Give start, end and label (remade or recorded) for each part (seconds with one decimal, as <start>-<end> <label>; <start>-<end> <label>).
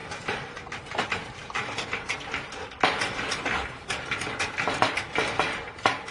0.0-3.2 remade; 3.2-6.1 recorded